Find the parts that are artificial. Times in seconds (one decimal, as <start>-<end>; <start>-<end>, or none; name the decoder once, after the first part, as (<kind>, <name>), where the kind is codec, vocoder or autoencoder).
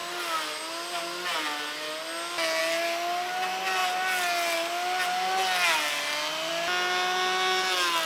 none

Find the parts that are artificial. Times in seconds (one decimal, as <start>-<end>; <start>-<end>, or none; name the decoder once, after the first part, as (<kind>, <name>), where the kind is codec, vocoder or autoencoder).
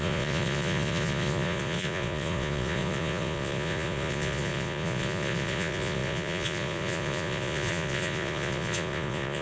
0.0-9.4 (vocoder, Vocos)